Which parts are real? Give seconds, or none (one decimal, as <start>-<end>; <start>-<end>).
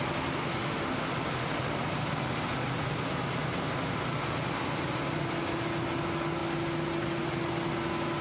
0.0-0.4; 1.1-8.2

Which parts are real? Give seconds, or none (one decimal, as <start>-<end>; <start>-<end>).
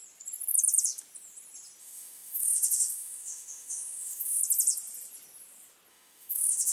0.0-1.8; 4.4-5.9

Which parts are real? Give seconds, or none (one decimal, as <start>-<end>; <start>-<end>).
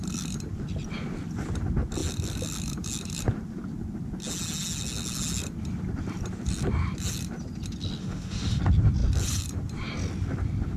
0.0-8.0; 8.6-10.8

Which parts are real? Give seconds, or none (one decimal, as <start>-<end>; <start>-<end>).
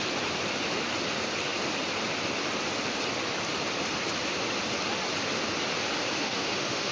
0.0-6.2